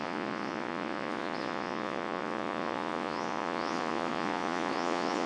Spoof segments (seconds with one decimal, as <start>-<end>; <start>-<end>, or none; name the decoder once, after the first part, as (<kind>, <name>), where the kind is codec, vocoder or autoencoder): 0.0-5.3 (vocoder, Vocos)